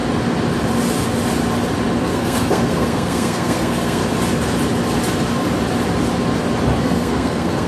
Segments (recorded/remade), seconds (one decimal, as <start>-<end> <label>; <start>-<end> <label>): 0.0-2.0 recorded; 2.0-4.0 remade; 4.0-6.8 recorded; 6.8-7.7 remade